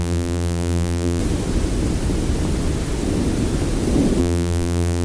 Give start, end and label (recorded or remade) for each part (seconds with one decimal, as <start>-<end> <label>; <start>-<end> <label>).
0.0-1.2 remade; 1.2-4.2 recorded; 4.2-5.0 remade